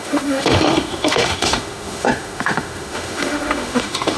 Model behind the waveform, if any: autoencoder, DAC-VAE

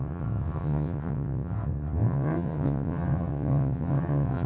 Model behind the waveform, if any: vocoder, WaveNeXt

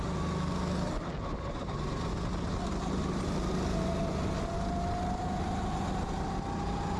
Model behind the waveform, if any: none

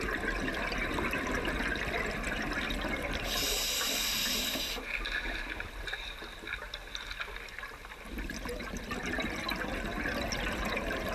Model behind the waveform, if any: none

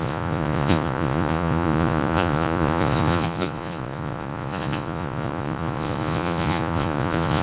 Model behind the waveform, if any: vocoder, Vocos